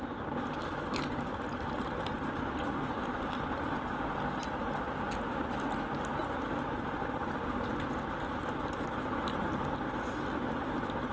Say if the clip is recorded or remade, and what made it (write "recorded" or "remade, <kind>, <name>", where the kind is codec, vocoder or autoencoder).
recorded